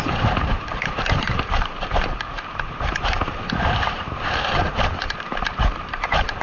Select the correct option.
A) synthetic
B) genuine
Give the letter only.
A